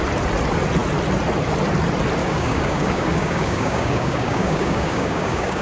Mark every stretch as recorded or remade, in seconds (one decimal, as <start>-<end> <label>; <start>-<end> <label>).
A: 0.0-2.2 recorded; 2.2-5.6 remade